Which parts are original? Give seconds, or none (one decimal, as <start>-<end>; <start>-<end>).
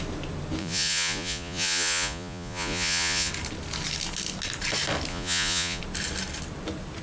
0.0-0.6; 3.3-5.1; 5.8-7.0